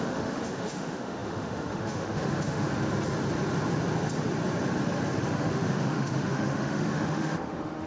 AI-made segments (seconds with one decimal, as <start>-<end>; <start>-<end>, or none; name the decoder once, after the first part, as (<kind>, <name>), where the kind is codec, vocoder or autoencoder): 0.0-2.7 (autoencoder, DAC-VAE); 5.2-7.9